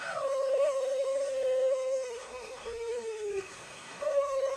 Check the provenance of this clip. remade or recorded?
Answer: remade